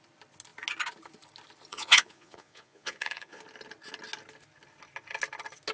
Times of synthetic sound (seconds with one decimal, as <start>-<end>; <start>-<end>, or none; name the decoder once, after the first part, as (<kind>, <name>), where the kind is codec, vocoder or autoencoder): 1.7-3.4 (vocoder, Vocos)

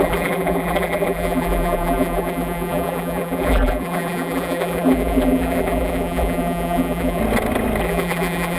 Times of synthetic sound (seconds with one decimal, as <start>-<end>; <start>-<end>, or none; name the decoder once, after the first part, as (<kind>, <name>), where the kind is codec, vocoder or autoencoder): 0.0-7.2 (vocoder, BigVGAN v2); 7.8-8.6

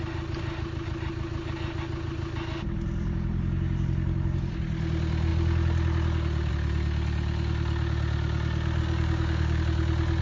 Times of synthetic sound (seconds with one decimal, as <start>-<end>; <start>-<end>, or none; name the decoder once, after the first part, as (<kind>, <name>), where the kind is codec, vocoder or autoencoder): 8.8-9.6 (codec, DAC)